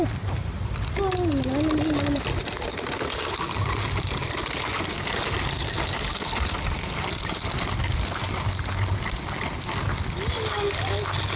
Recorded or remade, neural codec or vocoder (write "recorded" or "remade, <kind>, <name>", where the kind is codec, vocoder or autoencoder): recorded